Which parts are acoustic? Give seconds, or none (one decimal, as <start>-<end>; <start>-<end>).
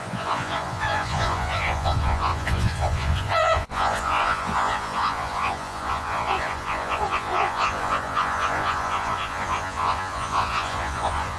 none